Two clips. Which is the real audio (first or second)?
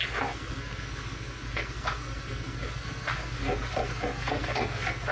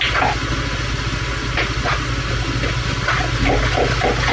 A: second